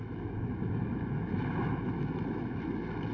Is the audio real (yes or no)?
no